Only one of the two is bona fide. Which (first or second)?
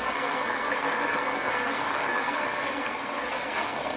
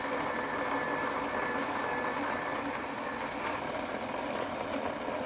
second